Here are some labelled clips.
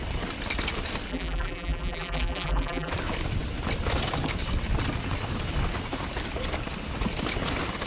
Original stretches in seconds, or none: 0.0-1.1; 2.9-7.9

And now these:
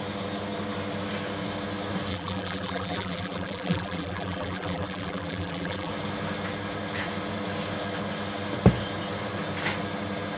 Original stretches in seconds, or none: 0.0-2.1; 5.9-10.4

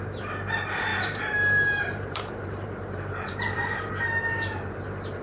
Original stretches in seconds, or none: 0.0-0.9; 3.9-5.2

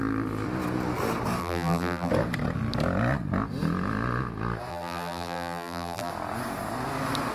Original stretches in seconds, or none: 0.0-1.4; 2.1-4.7; 6.1-7.3

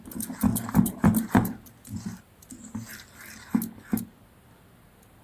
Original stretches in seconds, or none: 0.0-0.5; 1.3-5.2